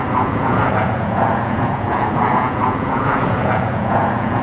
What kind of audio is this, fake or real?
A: fake